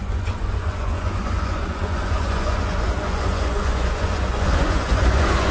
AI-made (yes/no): yes